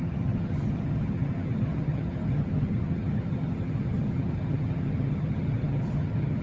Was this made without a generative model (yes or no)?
no